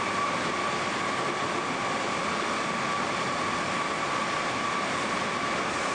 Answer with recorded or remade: recorded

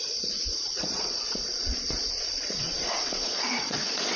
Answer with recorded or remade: remade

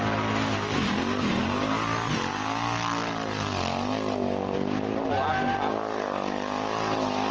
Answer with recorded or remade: recorded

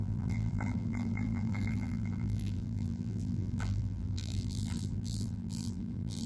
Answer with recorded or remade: remade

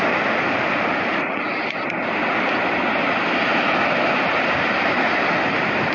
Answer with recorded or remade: recorded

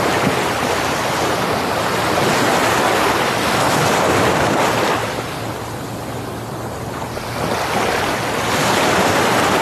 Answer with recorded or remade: recorded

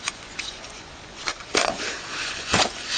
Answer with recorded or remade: remade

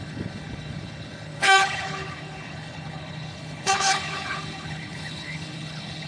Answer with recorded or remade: remade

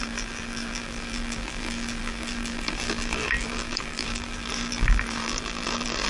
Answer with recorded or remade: remade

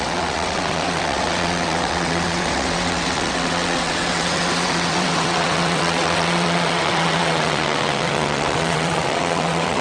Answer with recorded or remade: remade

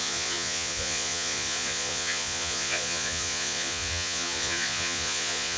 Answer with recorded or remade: remade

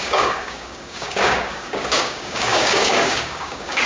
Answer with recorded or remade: remade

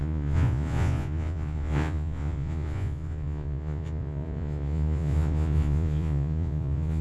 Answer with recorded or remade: remade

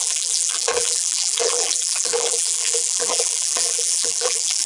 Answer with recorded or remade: remade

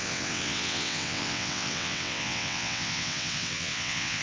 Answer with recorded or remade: remade